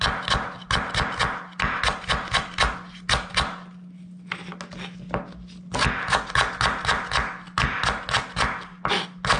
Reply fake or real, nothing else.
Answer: real